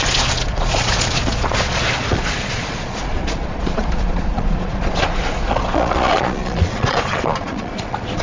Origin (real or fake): fake